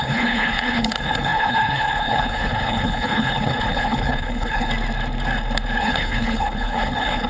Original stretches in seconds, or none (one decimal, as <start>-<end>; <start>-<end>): 4.7-5.8